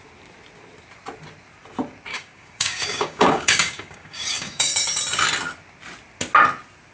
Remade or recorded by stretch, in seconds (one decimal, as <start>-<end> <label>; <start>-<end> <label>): 0.0-2.1 recorded; 2.1-5.0 remade; 5.0-6.9 recorded